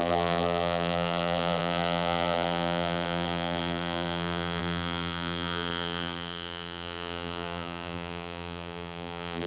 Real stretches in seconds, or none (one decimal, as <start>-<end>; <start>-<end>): none